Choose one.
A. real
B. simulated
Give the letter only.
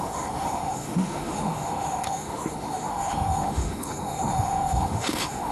B